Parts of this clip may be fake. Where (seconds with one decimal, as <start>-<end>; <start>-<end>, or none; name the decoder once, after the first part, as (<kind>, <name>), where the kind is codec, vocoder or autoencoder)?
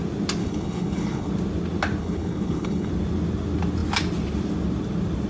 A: 0.4-1.3 (codec, HILCodec); 2.0-2.9